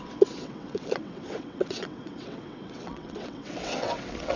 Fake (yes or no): yes